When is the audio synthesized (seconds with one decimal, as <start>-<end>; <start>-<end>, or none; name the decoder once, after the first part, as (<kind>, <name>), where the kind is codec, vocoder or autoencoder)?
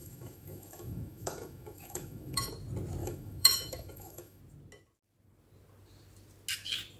0.0-2.5 (autoencoder, DAC-VAE); 3.0-4.4